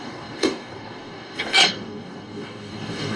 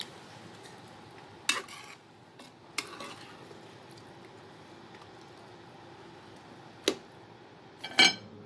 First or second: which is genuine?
second